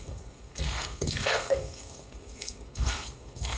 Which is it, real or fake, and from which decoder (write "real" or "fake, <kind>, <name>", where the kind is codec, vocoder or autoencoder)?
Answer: fake, codec, SNAC